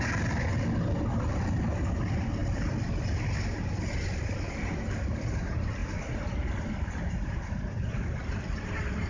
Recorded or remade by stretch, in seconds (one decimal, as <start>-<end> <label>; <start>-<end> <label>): 0.0-9.1 recorded